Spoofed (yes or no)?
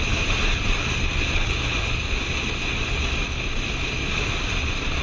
no